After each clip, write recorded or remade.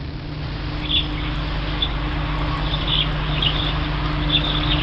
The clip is recorded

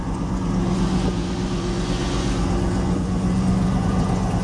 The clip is remade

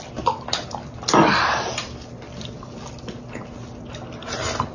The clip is recorded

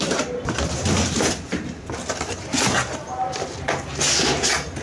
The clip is recorded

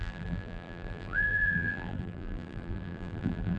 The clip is remade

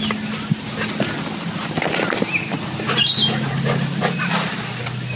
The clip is recorded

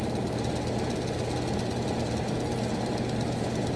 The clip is recorded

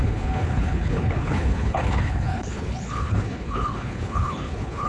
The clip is remade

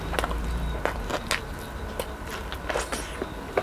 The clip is recorded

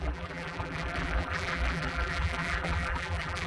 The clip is remade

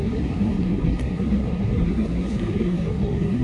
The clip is remade